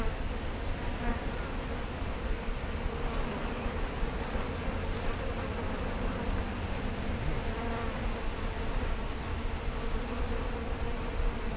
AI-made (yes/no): no